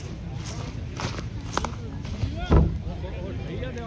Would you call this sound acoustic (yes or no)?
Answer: yes